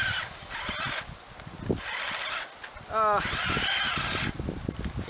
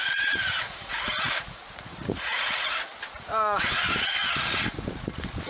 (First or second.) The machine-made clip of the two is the second